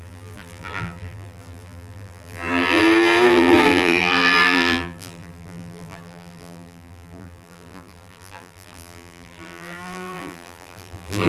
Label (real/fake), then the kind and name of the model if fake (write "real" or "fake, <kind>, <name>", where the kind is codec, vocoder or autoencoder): fake, vocoder, BigVGAN v2